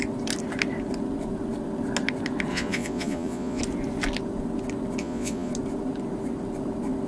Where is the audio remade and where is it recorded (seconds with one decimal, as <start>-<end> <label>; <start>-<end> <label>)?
0.0-2.5 recorded; 2.5-3.6 remade; 3.6-5.0 recorded; 5.0-5.5 remade; 5.5-7.1 recorded